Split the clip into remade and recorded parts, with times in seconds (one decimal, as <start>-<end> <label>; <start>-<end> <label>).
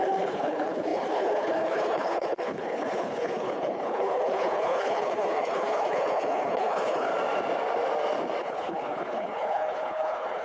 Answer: 0.0-7.1 remade; 7.1-8.4 recorded; 8.4-10.4 remade